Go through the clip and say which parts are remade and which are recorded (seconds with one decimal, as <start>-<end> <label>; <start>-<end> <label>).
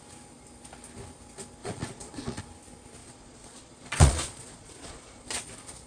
0.0-1.6 recorded; 1.6-2.4 remade; 2.4-3.0 recorded; 3.0-5.3 remade; 5.3-5.9 recorded